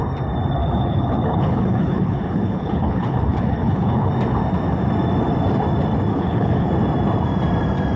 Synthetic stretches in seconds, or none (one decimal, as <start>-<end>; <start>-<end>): 0.6-4.1; 6.1-6.7